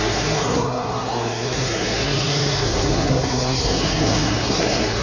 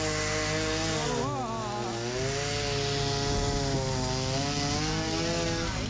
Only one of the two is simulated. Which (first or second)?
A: first